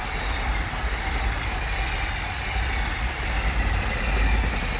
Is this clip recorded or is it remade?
recorded